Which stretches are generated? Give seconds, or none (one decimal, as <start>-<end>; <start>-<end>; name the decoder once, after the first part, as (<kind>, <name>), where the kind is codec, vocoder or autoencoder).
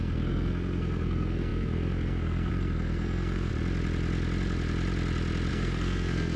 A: 0.0-3.5 (codec, SNAC); 5.5-6.4